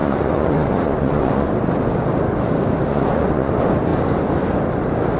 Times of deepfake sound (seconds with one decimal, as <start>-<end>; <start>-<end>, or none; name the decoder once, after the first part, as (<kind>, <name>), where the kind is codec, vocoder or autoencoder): 0.0-1.5 (vocoder, Vocos); 2.9-3.5